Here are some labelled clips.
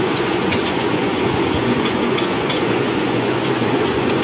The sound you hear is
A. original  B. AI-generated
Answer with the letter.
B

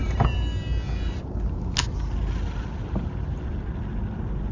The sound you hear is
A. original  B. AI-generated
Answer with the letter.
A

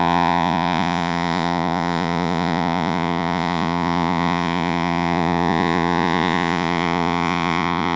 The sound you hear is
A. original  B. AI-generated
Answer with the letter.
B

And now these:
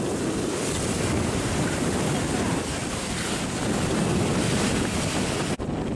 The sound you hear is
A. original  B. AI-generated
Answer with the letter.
A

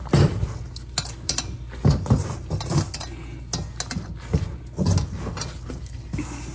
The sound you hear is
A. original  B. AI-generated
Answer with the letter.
A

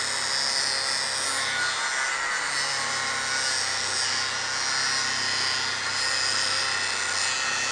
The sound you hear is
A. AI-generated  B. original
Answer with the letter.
B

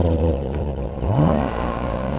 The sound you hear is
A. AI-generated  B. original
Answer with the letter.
A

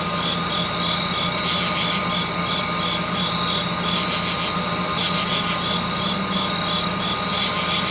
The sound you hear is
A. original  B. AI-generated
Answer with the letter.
A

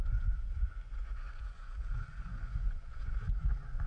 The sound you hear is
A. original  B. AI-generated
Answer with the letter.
B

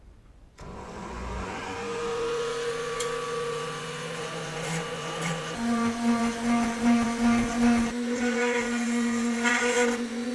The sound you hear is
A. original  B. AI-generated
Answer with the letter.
B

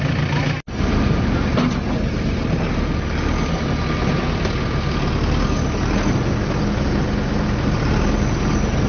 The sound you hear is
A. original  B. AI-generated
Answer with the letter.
A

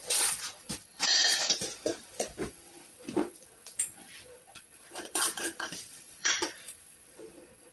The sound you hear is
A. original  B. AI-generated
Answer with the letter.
B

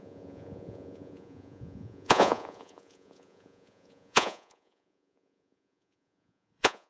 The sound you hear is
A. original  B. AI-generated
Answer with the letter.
B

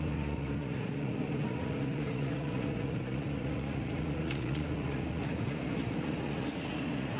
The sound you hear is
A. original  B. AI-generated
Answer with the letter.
B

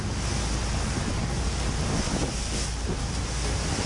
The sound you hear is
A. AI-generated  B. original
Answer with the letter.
B